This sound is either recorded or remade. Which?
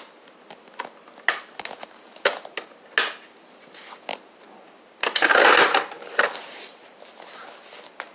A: recorded